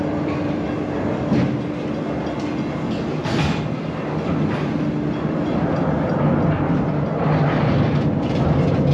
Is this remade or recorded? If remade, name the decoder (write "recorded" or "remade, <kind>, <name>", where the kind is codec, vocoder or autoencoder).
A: recorded